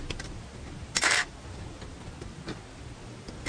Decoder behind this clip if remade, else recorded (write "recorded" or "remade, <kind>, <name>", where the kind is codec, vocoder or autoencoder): recorded